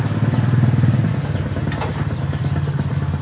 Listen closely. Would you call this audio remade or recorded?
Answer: recorded